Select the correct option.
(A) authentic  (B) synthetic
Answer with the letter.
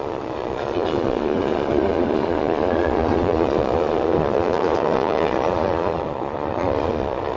B